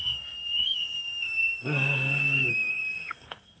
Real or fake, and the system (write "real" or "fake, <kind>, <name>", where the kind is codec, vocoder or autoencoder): fake, codec, SNAC